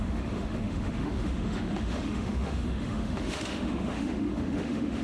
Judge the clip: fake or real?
fake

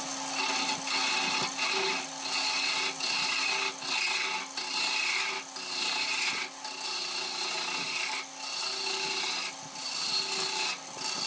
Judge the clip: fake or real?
real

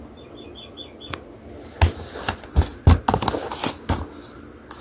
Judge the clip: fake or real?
real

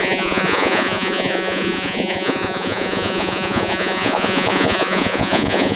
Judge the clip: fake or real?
fake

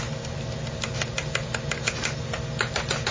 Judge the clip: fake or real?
real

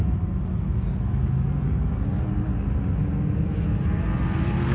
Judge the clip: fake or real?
real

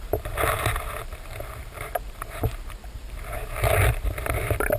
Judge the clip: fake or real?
fake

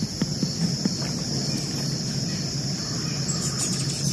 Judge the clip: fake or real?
real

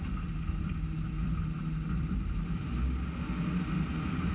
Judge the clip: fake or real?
real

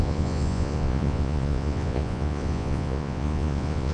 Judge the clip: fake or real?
fake